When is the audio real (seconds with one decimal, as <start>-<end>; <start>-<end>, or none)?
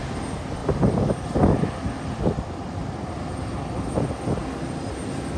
0.0-5.4